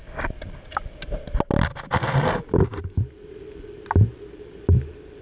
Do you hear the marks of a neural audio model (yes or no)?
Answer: no